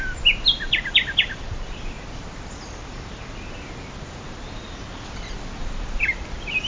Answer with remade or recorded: recorded